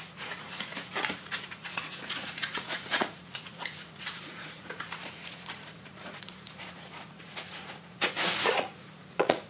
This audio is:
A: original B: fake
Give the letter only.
B